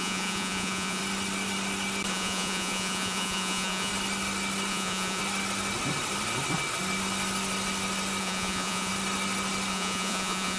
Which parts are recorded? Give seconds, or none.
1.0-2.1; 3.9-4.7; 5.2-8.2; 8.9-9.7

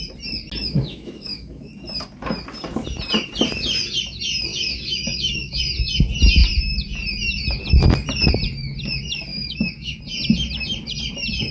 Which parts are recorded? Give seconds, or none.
0.0-0.6; 1.7-4.5; 5.6-9.3; 10.0-11.5

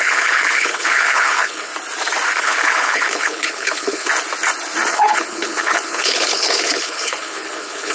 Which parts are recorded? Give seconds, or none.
1.7-2.4; 4.1-4.9

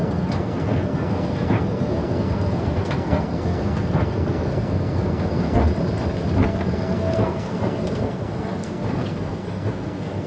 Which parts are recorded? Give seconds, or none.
5.6-6.4

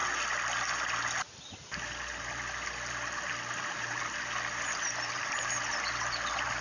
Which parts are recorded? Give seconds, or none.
0.0-6.6

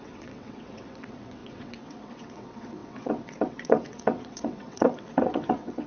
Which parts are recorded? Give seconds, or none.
none